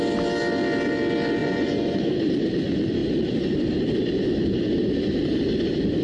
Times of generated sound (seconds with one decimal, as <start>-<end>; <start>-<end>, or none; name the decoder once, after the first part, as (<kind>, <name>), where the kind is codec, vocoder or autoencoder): 1.4-2.3 (vocoder, Vocos)